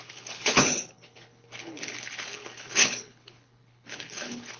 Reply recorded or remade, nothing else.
remade